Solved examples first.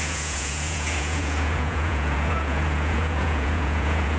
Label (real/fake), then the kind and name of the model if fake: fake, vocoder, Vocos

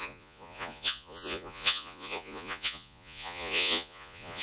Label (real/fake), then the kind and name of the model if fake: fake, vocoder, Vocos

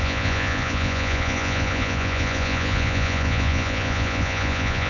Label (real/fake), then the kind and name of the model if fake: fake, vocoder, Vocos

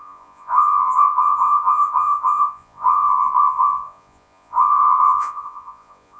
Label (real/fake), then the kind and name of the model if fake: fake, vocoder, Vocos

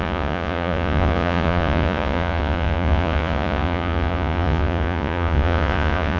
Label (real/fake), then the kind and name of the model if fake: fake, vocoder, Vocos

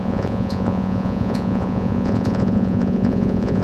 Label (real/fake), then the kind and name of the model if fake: fake, vocoder, Vocos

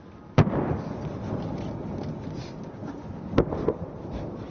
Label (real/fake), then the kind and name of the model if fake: real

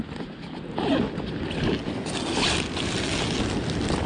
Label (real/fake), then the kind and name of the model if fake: real